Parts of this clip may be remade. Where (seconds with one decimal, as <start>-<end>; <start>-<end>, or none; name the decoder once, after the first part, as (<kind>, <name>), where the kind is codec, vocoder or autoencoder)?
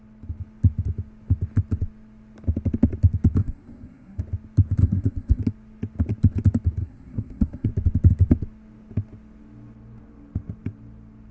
3.4-4.2 (codec, SNAC); 4.8-5.4; 6.8-7.7